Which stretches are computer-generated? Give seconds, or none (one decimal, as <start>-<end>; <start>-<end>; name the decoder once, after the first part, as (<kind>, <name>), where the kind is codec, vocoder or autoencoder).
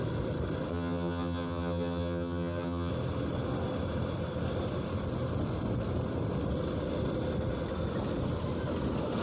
0.7-2.9 (vocoder, HiFi-GAN)